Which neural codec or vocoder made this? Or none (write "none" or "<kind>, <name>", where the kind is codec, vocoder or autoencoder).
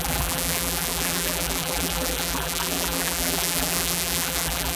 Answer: vocoder, BigVGAN v2